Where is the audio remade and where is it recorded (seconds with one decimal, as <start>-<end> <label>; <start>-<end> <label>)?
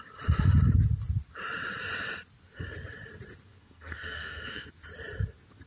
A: 0.0-3.6 recorded; 3.6-4.7 remade; 4.7-5.7 recorded